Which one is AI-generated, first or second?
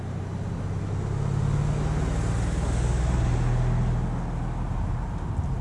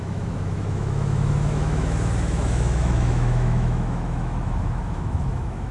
second